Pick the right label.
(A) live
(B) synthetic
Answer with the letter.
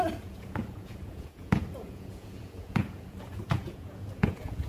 B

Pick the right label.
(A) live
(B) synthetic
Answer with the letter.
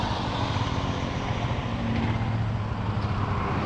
A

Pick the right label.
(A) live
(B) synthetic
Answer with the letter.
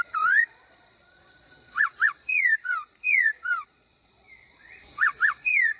B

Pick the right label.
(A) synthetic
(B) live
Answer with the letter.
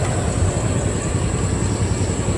B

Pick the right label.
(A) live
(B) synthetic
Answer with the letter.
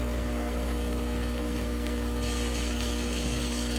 B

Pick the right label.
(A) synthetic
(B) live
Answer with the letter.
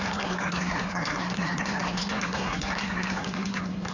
A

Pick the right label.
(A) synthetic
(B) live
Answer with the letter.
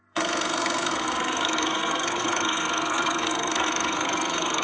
A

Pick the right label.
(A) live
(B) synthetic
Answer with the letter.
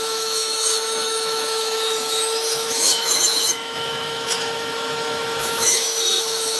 B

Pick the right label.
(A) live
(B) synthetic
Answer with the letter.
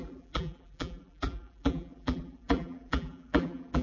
B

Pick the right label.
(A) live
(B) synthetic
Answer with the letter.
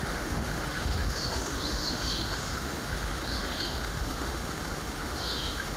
B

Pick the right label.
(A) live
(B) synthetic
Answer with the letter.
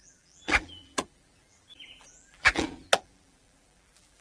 B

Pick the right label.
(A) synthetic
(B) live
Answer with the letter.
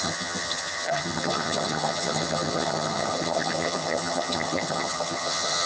A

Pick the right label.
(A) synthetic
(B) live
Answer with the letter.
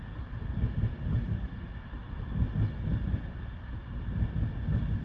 B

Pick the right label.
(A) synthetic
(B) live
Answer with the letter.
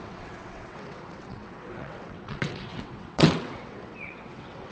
A